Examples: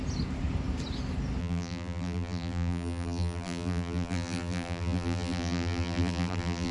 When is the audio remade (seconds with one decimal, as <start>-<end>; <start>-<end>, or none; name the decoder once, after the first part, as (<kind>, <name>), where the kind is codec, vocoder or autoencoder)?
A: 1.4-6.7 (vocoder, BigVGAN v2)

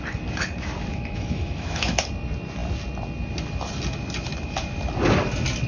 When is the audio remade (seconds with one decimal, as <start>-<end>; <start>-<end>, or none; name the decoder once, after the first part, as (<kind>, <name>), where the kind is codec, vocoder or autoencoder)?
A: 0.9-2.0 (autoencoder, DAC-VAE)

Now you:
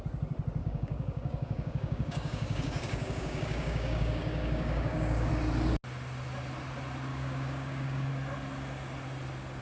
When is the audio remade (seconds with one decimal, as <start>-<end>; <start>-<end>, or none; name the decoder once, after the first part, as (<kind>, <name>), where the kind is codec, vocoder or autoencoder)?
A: 0.6-5.3 (codec, DAC); 7.1-8.1

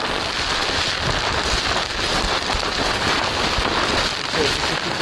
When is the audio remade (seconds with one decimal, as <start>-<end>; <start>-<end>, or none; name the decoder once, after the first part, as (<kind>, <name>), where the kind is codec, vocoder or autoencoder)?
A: none

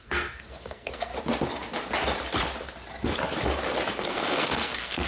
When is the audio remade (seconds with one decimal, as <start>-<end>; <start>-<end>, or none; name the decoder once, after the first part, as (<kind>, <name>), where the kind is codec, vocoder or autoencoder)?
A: 0.0-1.1 (codec, SNAC); 4.0-5.1

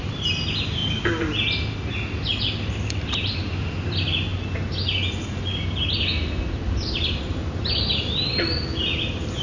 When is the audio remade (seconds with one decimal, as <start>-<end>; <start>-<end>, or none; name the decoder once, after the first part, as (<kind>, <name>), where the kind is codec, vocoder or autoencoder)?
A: 0.0-0.8 (vocoder, BigVGAN v2); 2.9-4.3; 7.6-9.4

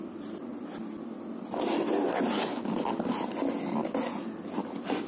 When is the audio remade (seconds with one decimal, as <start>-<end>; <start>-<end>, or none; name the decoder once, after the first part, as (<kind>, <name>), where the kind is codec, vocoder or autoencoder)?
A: none